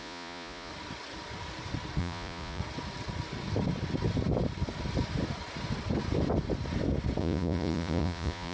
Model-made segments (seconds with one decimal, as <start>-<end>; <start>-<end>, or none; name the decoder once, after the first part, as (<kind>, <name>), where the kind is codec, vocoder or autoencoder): 0.0-0.7 (vocoder, Vocos); 2.0-2.6; 7.2-8.5